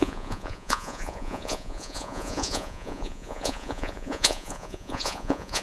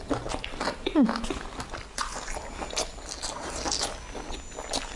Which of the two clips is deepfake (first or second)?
first